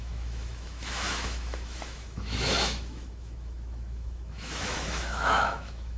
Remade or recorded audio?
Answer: remade